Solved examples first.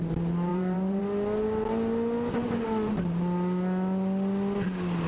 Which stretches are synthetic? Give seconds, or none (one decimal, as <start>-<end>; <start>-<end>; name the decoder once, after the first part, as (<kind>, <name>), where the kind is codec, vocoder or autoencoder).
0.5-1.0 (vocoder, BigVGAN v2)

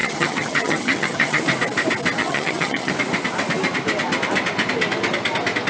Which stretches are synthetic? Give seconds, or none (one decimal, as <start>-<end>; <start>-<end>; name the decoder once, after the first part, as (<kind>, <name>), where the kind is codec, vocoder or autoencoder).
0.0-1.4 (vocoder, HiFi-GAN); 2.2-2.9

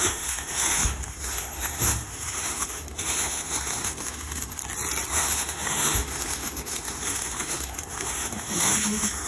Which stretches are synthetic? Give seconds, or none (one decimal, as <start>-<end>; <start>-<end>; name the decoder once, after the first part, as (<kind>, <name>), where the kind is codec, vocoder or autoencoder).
0.0-4.6 (autoencoder, DAC-VAE); 5.1-9.3

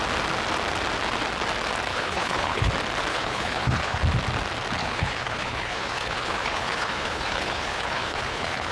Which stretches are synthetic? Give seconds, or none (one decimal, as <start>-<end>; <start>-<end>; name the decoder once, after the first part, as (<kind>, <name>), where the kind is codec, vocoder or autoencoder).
1.9-2.7 (codec, HILCodec); 3.1-4.0; 4.8-8.7

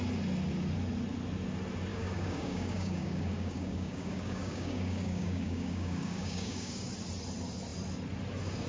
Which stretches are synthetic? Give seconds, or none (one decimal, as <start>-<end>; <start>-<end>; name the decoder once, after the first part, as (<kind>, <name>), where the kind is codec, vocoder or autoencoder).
1.9-6.9 (codec, DAC)